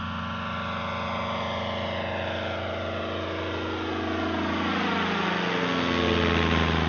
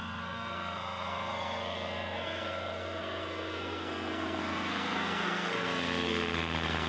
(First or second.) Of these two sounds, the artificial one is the second